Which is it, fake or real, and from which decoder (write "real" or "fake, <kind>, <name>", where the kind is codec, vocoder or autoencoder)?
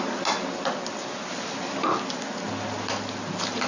real